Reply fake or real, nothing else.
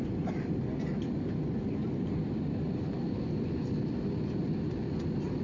real